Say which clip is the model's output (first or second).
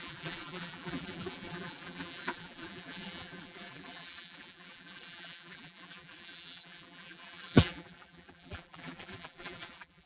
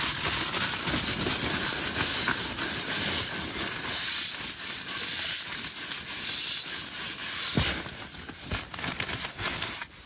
first